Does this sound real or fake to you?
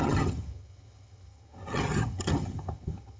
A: fake